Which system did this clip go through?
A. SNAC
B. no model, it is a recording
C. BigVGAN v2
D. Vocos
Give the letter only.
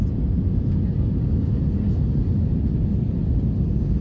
B